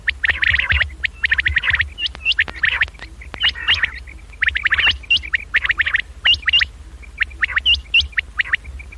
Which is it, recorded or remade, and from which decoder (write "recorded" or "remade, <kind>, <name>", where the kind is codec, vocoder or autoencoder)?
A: recorded